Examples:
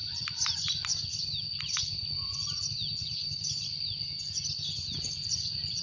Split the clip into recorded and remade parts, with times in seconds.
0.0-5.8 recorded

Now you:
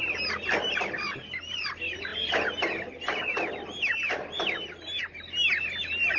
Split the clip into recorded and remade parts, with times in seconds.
0.0-6.2 recorded

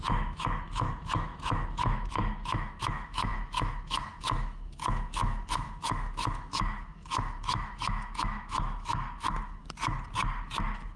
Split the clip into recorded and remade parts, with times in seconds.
0.0-9.6 remade; 9.6-11.0 recorded